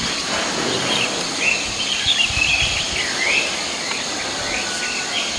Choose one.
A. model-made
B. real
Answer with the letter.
B